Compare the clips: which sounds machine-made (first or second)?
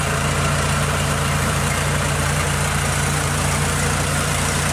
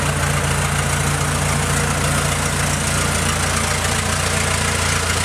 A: first